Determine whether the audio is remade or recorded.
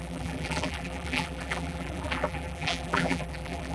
remade